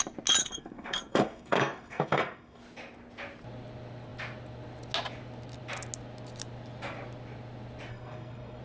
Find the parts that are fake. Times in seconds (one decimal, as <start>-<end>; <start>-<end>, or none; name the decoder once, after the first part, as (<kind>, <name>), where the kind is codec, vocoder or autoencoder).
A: 0.4-2.6 (codec, SNAC); 7.9-8.6